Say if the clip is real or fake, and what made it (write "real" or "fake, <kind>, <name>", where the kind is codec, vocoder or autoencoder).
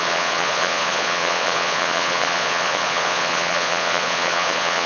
fake, vocoder, Vocos